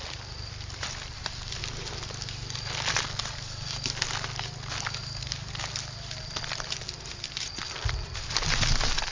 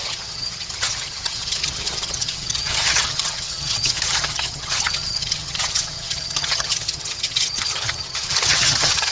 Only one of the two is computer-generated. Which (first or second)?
second